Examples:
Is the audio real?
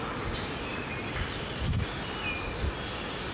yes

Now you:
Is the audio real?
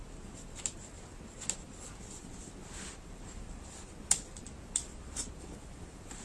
no